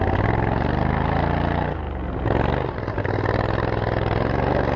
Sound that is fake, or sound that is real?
real